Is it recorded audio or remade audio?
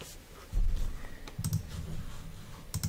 recorded